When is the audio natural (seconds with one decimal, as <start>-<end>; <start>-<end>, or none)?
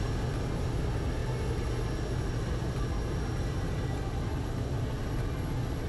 0.0-5.9